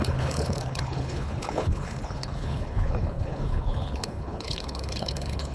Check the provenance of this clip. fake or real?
fake